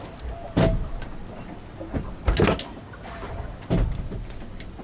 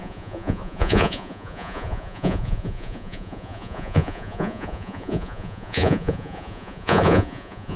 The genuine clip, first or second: first